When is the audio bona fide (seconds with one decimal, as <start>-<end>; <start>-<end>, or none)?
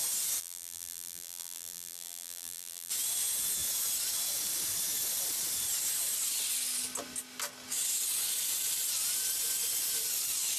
0.0-0.4; 2.9-10.6